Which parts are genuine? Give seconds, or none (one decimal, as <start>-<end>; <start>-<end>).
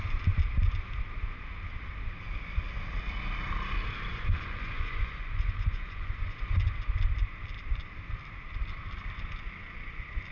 0.0-4.1; 6.4-10.3